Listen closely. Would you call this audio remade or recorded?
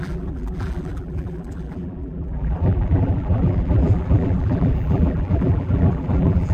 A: remade